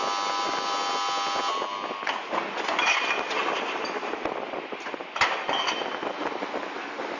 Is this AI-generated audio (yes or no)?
no